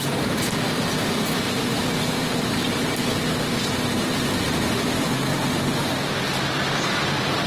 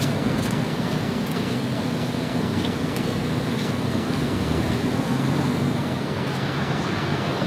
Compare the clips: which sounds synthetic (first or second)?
second